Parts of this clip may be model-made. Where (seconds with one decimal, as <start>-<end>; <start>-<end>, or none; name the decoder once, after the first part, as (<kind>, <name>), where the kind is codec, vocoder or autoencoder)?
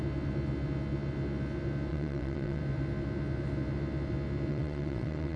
1.9-2.6 (vocoder, WaveNeXt); 4.5-5.4